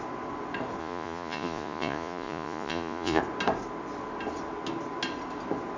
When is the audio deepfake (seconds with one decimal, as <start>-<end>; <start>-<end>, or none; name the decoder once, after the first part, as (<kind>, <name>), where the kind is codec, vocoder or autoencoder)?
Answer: 0.8-3.2 (vocoder, Vocos)